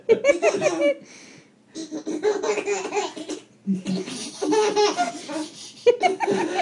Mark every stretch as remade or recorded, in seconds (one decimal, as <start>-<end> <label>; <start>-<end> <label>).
0.0-6.6 recorded